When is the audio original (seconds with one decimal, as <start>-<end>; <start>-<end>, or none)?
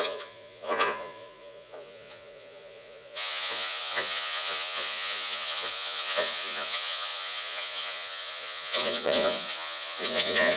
none